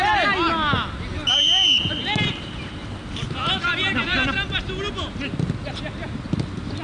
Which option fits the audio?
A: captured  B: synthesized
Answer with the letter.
A